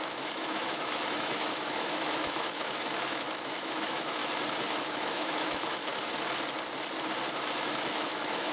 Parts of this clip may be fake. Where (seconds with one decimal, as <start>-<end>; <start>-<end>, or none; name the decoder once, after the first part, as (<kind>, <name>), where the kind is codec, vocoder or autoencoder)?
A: 0.0-4.2 (autoencoder, DAC-VAE); 4.9-5.9; 7.9-8.5